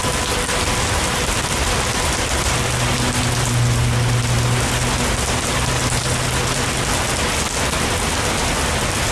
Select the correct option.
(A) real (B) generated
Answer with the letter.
A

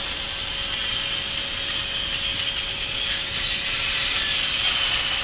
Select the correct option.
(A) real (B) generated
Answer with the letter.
A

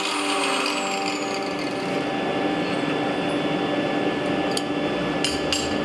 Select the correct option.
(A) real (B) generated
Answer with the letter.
A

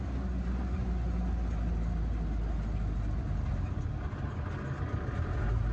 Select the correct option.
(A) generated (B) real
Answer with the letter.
B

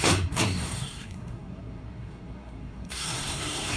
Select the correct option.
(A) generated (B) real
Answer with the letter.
A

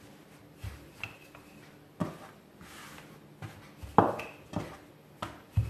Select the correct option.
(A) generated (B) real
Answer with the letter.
B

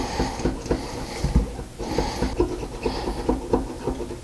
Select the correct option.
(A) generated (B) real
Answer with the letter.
B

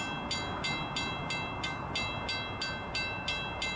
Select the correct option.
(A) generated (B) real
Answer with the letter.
B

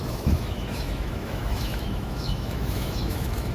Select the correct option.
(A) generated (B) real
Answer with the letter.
A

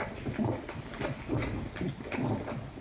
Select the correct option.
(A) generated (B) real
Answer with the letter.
B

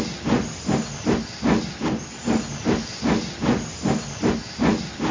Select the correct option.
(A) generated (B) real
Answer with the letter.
B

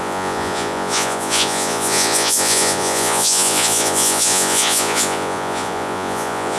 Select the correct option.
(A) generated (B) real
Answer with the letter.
A